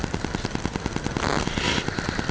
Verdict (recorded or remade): recorded